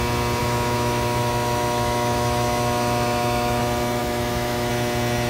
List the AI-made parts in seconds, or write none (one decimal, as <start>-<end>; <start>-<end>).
0.4-3.6; 4.0-4.7